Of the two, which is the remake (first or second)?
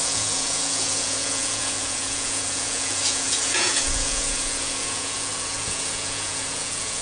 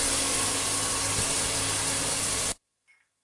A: first